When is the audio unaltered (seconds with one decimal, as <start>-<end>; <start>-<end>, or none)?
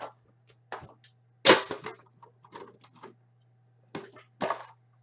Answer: 0.0-5.0